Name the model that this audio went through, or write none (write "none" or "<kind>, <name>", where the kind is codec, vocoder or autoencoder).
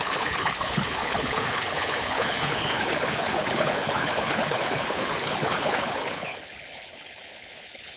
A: codec, HILCodec